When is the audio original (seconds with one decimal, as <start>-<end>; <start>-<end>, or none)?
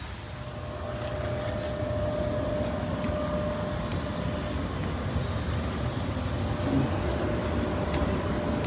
0.0-8.7